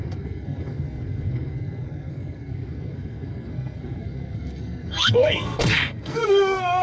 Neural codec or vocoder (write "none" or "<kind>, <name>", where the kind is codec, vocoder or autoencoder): codec, SNAC